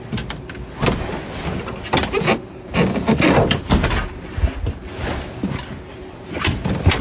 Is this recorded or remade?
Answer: recorded